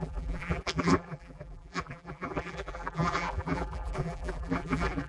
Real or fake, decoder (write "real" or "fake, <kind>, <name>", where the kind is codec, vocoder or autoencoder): fake, vocoder, BigVGAN v2